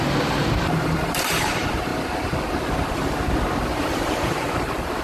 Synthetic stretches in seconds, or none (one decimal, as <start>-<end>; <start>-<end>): 0.0-1.9; 3.8-5.0

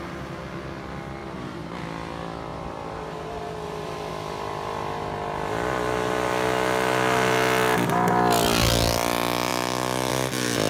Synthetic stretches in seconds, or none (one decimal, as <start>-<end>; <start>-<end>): 1.2-1.8; 2.5-4.1